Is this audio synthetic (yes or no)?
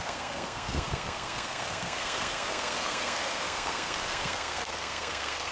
yes